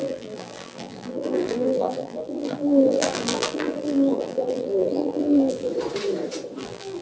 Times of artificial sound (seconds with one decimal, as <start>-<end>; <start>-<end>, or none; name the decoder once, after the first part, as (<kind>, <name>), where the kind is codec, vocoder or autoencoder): 0.0-5.7 (vocoder, BigVGAN v2); 6.6-7.0